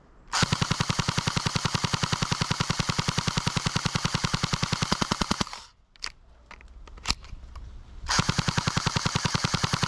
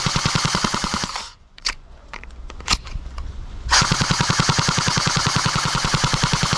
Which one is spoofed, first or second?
second